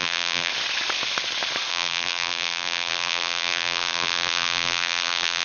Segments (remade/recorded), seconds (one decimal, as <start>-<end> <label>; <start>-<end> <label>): 0.0-0.5 remade; 0.5-1.7 recorded; 1.7-5.4 remade